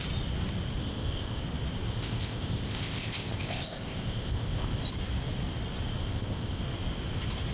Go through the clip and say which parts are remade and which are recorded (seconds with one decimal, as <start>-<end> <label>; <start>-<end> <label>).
0.0-0.8 recorded; 0.8-1.4 remade; 1.4-1.9 recorded; 1.9-4.8 remade; 4.8-6.0 recorded; 6.0-6.6 remade; 6.6-7.5 recorded